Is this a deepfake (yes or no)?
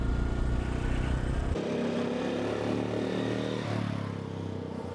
no